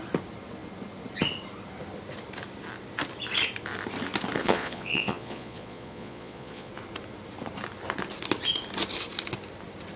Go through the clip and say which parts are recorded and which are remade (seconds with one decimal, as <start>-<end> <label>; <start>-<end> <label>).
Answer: 0.0-4.4 recorded; 4.4-6.7 remade; 6.7-10.0 recorded